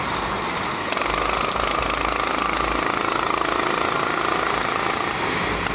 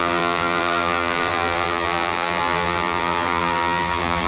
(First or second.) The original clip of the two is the first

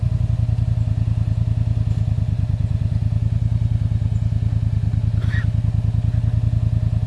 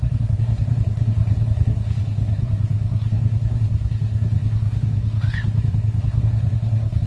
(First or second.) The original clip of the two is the first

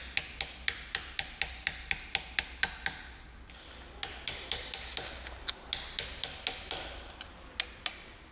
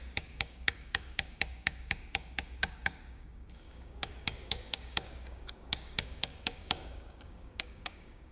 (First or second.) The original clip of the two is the first